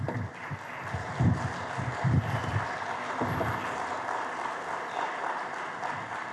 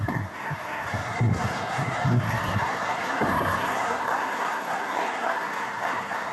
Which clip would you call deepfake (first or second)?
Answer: second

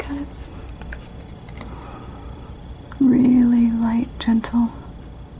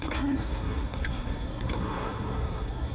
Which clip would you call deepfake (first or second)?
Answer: second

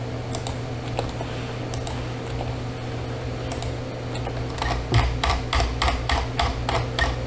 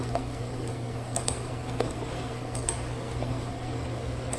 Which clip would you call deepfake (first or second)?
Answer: second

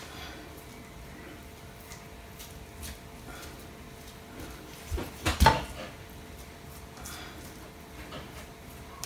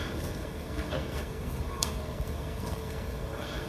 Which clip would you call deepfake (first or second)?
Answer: second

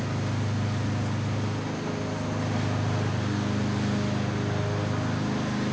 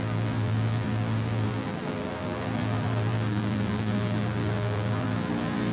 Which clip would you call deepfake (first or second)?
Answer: second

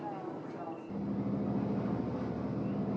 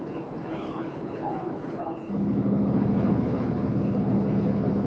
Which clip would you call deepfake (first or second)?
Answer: second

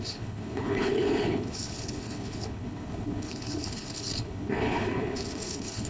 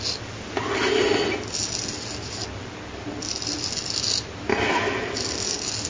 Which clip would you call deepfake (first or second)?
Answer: first